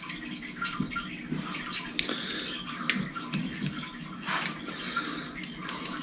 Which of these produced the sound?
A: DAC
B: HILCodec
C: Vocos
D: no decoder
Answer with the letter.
D